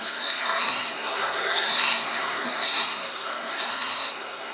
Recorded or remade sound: remade